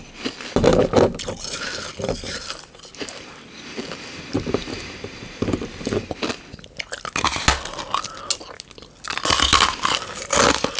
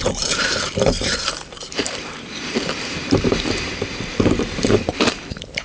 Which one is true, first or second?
first